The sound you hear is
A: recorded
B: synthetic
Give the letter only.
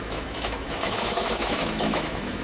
B